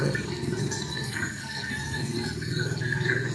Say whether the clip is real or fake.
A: fake